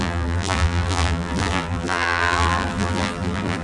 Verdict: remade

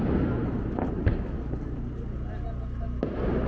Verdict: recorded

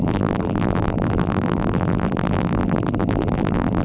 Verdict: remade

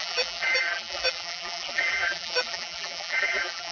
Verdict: remade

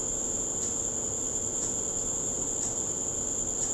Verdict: remade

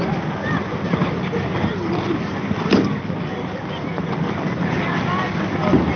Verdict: recorded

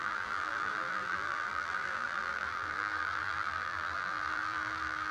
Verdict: remade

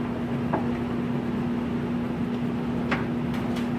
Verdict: recorded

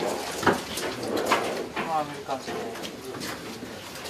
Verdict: recorded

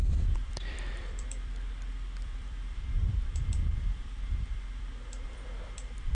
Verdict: remade